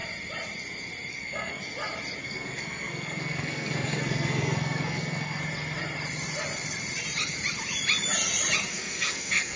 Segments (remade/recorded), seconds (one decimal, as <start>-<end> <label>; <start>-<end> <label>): 0.0-1.1 recorded; 1.1-1.6 remade; 1.6-2.2 recorded; 2.2-5.4 remade; 5.4-8.7 recorded; 8.7-9.6 remade